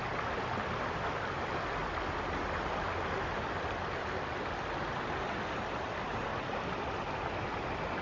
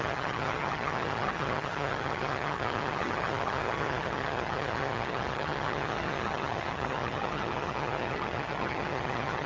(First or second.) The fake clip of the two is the second